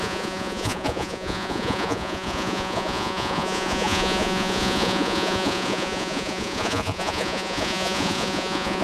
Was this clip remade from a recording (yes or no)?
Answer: yes